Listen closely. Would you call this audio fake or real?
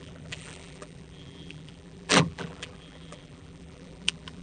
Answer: fake